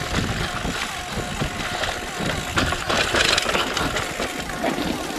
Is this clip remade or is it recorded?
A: recorded